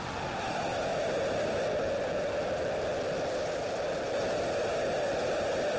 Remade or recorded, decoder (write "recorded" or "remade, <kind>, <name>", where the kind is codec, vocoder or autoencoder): recorded